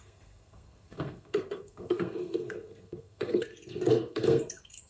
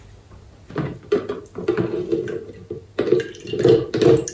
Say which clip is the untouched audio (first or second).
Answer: second